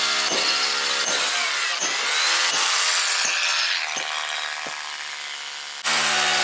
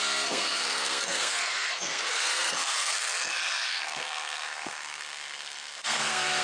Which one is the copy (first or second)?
second